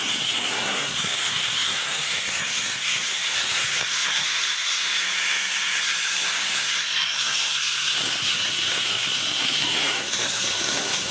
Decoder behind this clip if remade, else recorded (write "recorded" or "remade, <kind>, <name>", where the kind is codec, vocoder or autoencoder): remade, codec, SNAC